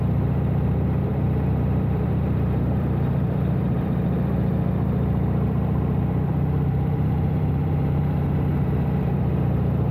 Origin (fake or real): fake